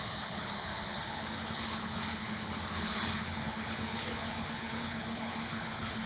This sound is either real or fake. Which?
fake